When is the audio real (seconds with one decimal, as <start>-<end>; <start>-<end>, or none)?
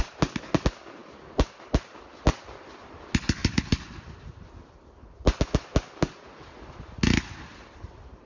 0.0-8.3